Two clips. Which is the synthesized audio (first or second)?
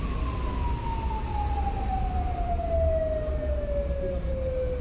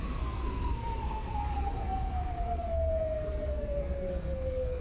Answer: second